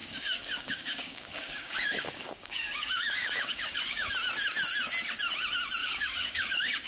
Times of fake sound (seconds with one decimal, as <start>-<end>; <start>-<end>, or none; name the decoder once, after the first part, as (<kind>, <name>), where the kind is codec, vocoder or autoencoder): 0.0-4.1 (codec, DAC); 5.8-6.9